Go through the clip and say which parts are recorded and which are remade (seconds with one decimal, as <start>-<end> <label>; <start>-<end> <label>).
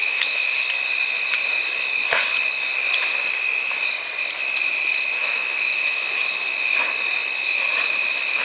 0.0-0.5 remade; 0.5-5.2 recorded; 5.2-6.2 remade; 6.2-8.4 recorded